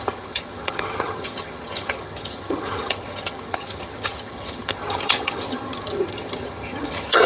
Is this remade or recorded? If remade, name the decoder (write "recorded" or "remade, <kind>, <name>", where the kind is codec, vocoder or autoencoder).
remade, vocoder, HiFi-GAN